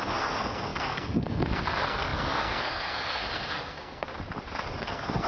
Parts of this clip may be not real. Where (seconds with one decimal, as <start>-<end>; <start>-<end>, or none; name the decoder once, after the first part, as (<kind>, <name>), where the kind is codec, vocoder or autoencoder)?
0.0-4.1 (codec, SNAC); 4.8-5.3